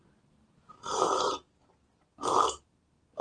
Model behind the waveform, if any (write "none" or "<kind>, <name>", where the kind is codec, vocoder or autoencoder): none